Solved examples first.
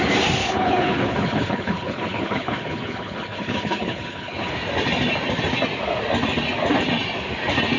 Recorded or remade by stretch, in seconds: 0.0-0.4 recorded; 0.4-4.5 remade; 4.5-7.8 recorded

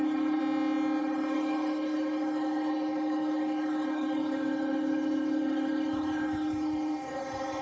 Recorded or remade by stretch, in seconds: 0.0-0.4 remade; 0.4-1.0 recorded; 1.0-7.6 remade

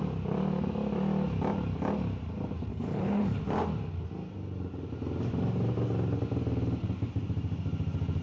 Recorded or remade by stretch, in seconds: 0.0-2.7 recorded; 2.7-3.4 remade; 3.4-8.2 recorded